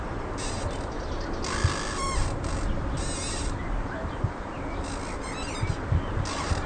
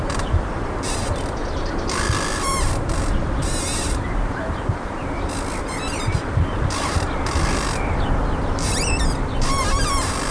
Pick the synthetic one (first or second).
second